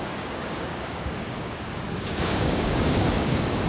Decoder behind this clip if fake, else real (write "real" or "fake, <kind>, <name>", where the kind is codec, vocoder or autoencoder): fake, codec, DAC